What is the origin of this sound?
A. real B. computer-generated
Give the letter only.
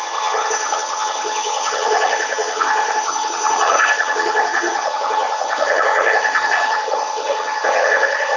B